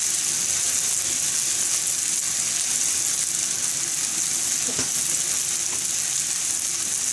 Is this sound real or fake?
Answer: real